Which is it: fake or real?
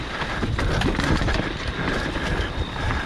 real